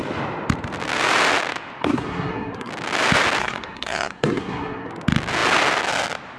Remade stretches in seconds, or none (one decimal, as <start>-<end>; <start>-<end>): 1.8-2.7; 3.4-4.9